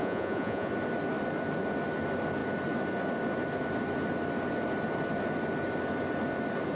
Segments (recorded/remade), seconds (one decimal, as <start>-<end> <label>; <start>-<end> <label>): 0.0-0.7 remade; 0.7-6.7 recorded